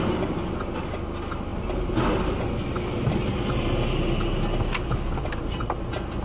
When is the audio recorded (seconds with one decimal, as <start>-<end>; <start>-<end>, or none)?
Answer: 0.0-6.2